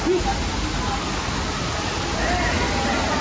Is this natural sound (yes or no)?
yes